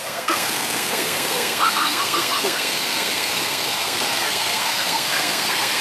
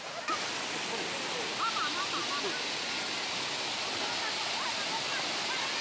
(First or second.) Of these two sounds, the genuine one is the second